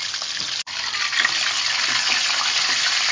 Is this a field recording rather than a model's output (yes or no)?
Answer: yes